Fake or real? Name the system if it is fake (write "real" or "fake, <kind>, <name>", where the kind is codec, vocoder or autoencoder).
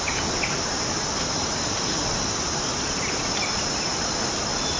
real